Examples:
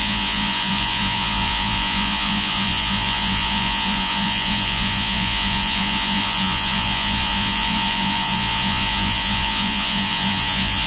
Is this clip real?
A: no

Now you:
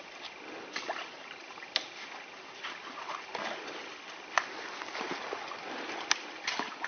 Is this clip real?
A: yes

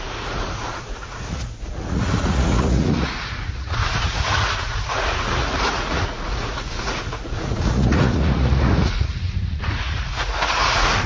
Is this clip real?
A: no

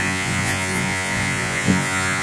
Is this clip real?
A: no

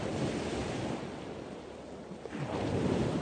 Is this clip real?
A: yes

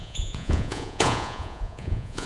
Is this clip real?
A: no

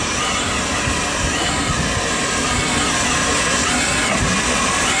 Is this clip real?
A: yes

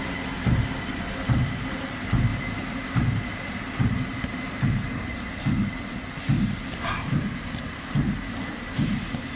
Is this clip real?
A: yes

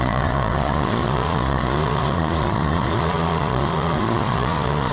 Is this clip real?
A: no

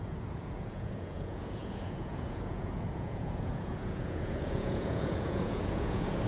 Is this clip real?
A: no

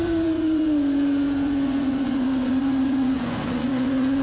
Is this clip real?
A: no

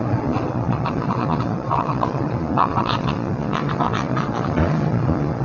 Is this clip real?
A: no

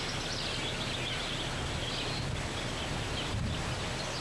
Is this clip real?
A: yes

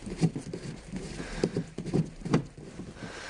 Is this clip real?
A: yes